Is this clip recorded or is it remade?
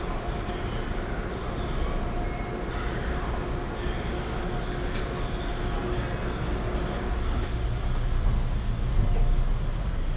recorded